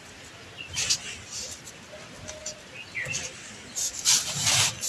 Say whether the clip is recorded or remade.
recorded